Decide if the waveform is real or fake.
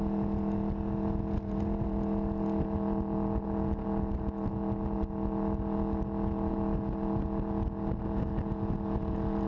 real